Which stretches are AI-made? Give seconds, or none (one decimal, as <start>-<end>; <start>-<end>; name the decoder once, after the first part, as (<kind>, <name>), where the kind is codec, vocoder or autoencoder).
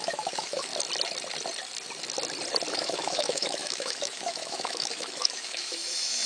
0.0-0.7 (autoencoder, DAC-VAE); 2.7-6.3